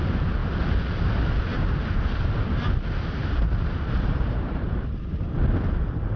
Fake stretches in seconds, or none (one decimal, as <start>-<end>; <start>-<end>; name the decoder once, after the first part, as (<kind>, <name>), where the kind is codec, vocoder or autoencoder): 3.2-5.1 (vocoder, BigVGAN v2)